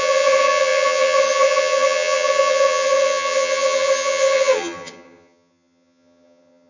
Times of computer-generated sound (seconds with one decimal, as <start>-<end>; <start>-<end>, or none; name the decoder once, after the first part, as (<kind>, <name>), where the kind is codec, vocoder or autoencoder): 0.0-6.7 (vocoder, HiFi-GAN)